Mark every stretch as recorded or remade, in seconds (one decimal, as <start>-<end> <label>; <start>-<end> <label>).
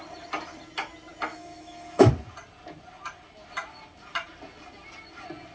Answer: 0.0-1.3 recorded; 1.3-2.1 remade; 2.1-5.5 recorded